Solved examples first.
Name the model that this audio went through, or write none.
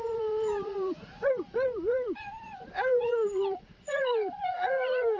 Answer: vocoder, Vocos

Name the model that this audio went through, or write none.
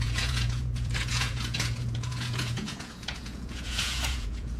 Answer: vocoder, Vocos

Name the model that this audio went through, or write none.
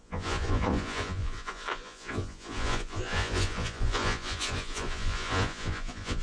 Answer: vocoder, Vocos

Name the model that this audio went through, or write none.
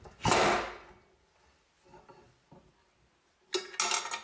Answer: none